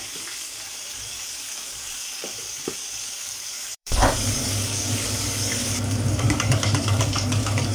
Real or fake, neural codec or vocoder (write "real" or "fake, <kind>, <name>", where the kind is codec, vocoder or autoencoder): fake, codec, DAC